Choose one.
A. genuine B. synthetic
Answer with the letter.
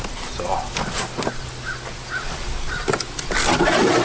A